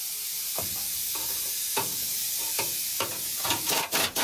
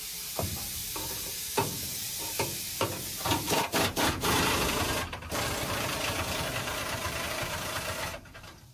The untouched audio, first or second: first